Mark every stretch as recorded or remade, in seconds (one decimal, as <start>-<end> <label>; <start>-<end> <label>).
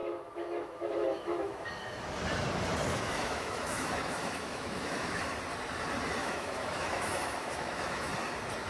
0.0-1.7 remade; 1.7-2.9 recorded; 2.9-5.2 remade; 5.2-6.2 recorded; 6.2-8.1 remade; 8.1-8.7 recorded